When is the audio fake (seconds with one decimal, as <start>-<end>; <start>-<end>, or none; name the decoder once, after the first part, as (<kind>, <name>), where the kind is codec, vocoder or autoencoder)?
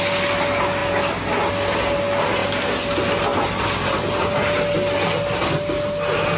none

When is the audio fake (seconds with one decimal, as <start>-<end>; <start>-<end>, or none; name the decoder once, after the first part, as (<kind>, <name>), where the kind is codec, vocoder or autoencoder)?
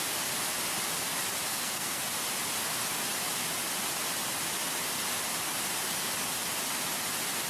1.5-2.0 (codec, SNAC)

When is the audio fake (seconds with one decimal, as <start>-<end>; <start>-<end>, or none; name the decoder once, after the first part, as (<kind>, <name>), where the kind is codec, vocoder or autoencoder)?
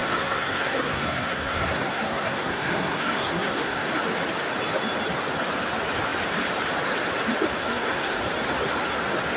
0.0-3.9 (codec, SNAC); 7.6-8.2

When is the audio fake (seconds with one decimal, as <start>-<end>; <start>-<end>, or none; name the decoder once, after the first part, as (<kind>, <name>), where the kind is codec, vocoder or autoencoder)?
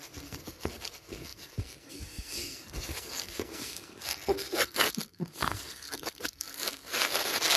0.0-7.6 (codec, SNAC)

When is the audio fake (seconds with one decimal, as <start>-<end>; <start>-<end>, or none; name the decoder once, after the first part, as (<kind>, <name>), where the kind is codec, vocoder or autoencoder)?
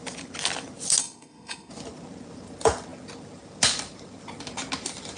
1.0-1.7 (codec, SNAC)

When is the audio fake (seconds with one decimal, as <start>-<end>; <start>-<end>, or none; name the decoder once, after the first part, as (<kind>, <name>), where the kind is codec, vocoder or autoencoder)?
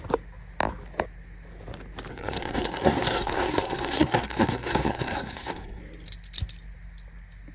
2.1-5.8 (codec, SNAC)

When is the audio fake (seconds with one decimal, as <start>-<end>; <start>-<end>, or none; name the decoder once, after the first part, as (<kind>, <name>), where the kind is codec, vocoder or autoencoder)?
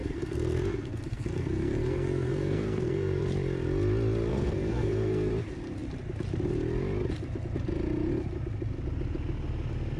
0.0-3.2 (codec, SNAC); 4.3-5.3